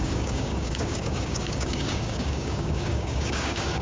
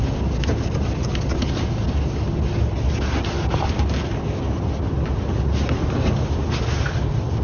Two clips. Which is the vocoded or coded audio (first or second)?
first